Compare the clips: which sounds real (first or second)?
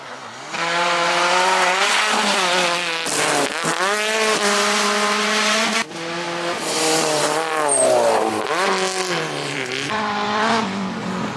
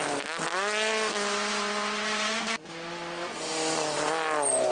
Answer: second